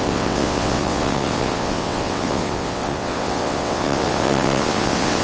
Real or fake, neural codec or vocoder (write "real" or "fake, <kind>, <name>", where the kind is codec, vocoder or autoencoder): fake, vocoder, WaveNeXt